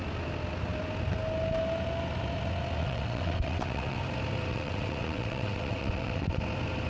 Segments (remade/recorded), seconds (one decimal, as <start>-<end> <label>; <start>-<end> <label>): 0.0-2.8 recorded; 2.8-4.0 remade; 4.0-4.5 recorded; 4.5-6.4 remade; 6.4-6.9 recorded

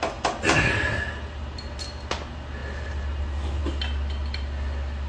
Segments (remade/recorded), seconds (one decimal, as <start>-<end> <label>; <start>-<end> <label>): 0.0-5.1 recorded

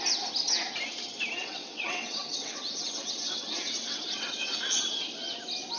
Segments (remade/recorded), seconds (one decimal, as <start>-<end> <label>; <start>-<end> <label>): 0.0-1.4 recorded; 1.4-4.9 remade; 4.9-5.8 recorded

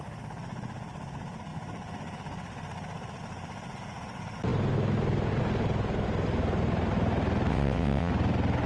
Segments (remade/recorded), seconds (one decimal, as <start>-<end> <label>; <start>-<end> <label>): 0.0-7.5 recorded; 7.5-8.1 remade; 8.1-8.7 recorded